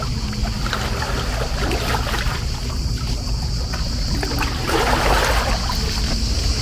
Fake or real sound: real